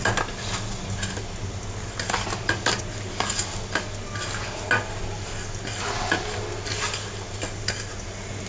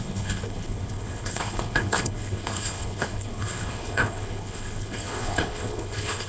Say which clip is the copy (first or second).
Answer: second